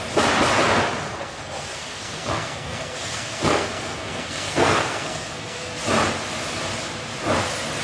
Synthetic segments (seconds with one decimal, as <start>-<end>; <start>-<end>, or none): 1.0-5.7